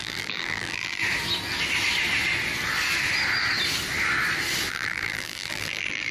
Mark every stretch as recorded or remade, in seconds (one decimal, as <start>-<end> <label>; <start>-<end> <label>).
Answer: 0.0-1.0 remade; 1.0-4.7 recorded; 4.7-6.1 remade